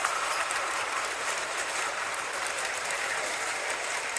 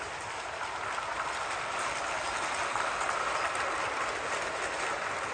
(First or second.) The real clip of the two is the second